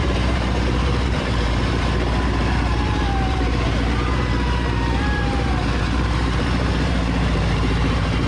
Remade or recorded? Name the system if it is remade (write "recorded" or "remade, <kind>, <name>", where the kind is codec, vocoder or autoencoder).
remade, vocoder, BigVGAN v2